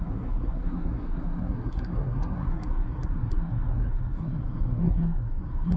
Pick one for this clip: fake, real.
fake